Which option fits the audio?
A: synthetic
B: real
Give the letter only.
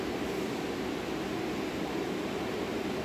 B